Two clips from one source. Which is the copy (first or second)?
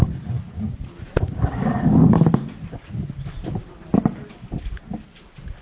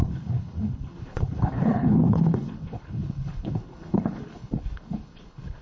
second